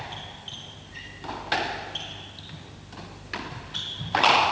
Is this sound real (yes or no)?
yes